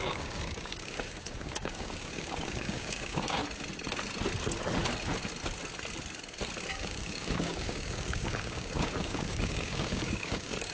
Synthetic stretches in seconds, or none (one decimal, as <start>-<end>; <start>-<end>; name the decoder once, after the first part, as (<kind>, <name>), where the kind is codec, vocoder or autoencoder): 0.0-3.4 (codec, DAC); 6.7-10.7